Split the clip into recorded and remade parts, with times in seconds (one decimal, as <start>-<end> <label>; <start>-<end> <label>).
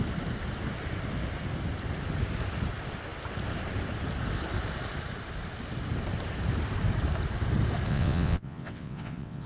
0.0-7.9 recorded; 7.9-9.5 remade